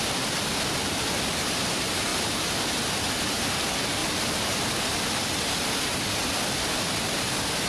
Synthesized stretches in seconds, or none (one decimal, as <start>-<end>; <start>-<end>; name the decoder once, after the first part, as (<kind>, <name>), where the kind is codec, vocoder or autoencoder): none